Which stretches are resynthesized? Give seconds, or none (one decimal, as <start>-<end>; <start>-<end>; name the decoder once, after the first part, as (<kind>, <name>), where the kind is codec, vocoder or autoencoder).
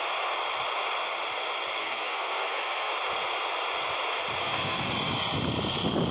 1.8-2.9 (codec, SNAC); 4.4-4.9